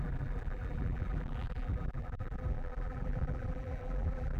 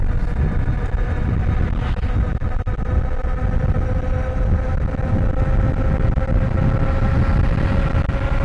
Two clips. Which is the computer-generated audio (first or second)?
first